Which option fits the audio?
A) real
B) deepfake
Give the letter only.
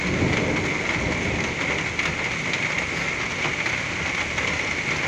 A